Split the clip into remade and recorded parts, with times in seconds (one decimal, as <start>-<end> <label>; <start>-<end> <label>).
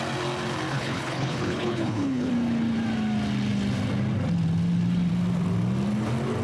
0.0-0.7 recorded; 0.7-2.3 remade; 2.3-6.4 recorded